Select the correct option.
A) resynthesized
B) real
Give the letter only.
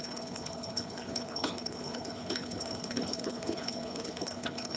A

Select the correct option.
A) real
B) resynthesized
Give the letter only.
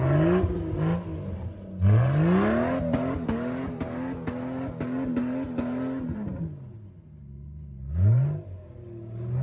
A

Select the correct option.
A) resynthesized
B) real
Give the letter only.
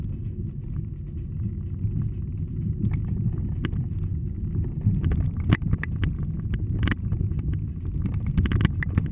B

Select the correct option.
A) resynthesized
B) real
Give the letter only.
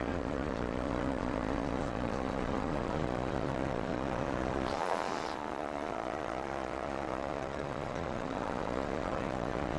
A